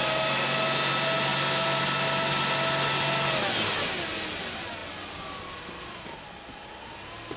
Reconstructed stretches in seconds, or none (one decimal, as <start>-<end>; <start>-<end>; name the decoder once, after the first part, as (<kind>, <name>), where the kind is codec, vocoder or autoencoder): none